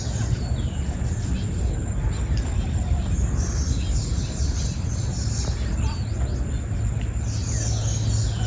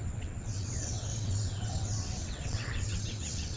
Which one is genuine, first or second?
first